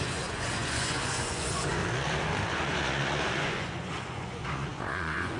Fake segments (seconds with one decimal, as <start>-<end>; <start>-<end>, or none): 0.0-1.8; 2.5-5.4